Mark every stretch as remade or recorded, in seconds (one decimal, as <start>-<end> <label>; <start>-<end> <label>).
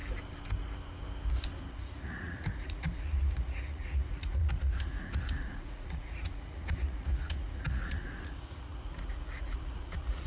0.0-1.6 recorded; 1.6-10.3 remade